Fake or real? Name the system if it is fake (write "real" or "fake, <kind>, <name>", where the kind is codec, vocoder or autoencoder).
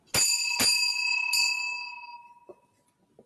real